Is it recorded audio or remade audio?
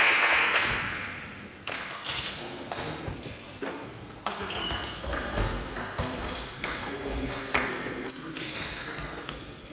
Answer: remade